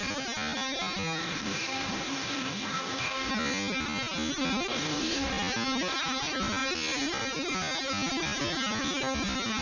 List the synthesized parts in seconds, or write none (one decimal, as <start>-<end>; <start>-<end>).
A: 1.2-3.3; 4.7-5.3